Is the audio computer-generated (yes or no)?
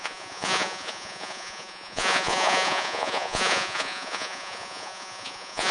yes